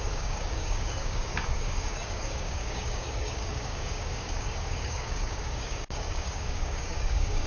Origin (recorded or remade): remade